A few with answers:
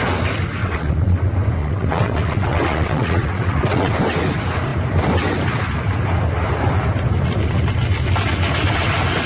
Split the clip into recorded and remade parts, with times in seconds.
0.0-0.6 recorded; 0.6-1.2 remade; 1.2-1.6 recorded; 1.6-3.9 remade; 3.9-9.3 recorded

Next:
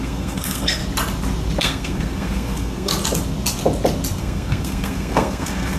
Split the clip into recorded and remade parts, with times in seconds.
0.0-0.8 remade; 0.8-1.6 recorded; 1.6-2.9 remade; 2.9-4.2 recorded; 4.2-5.8 remade

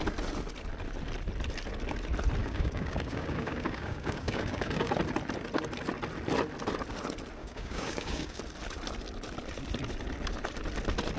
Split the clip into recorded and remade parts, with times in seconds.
0.0-2.4 recorded; 2.4-4.9 remade; 4.9-7.4 recorded; 7.4-8.4 remade; 8.4-11.2 recorded

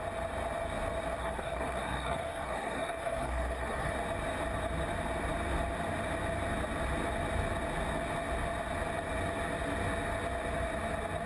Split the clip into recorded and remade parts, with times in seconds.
0.0-1.2 recorded; 1.2-3.9 remade; 3.9-11.3 recorded

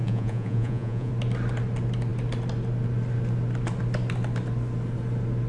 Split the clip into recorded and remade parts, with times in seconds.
0.0-1.1 remade; 1.1-5.5 recorded

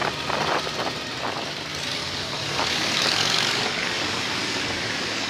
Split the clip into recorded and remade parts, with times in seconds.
0.0-2.0 recorded; 2.0-5.3 remade

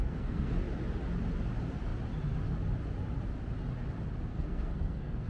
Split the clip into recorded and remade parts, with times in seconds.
0.0-0.5 remade; 0.5-4.3 recorded; 4.3-5.3 remade